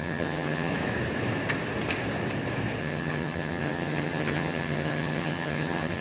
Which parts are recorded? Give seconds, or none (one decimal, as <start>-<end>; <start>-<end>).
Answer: 0.7-2.8